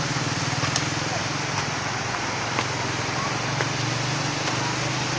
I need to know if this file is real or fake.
real